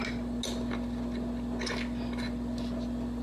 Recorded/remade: recorded